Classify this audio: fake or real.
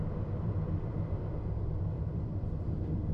fake